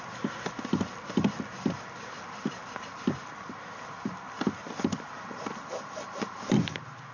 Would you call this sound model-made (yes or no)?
yes